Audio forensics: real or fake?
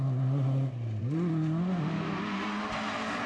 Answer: real